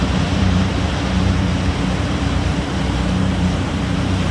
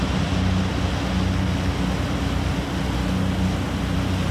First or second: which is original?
second